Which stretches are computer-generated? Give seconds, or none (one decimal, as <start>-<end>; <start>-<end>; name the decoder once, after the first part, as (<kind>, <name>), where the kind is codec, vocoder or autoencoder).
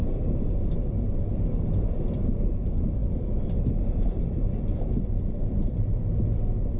0.0-6.8 (vocoder, BigVGAN v2)